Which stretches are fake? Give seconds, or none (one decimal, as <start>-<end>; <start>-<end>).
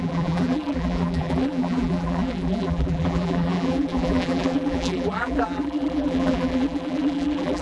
0.0-7.6